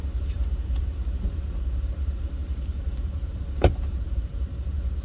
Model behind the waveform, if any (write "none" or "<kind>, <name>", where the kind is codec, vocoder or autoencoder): vocoder, BigVGAN v2